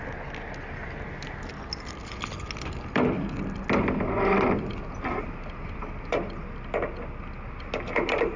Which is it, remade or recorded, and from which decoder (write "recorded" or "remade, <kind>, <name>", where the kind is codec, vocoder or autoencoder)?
recorded